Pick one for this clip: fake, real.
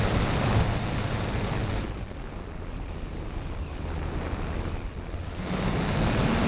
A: real